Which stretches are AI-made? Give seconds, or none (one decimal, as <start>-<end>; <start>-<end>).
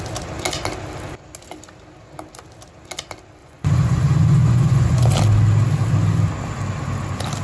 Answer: 3.4-5.1